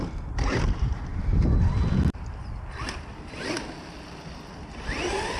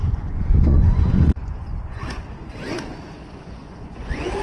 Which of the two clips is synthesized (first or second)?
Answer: second